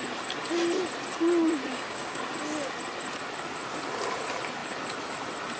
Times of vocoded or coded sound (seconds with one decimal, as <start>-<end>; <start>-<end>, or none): 1.7-2.2